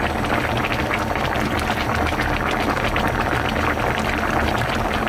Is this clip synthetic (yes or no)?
no